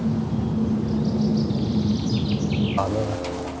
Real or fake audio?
real